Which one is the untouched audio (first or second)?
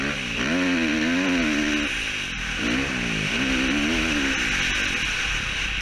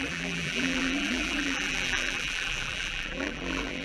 first